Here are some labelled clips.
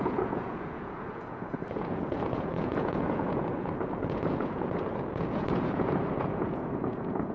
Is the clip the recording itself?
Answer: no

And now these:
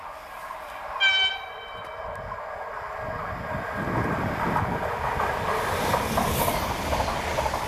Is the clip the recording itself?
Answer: yes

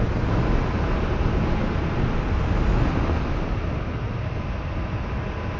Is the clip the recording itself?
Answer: yes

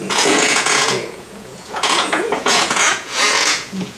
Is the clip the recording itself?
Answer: no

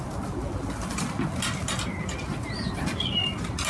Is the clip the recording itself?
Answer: yes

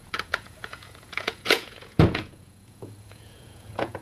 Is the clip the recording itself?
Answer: no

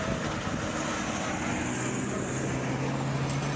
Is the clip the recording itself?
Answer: yes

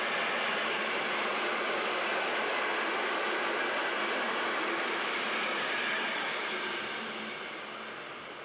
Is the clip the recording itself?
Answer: yes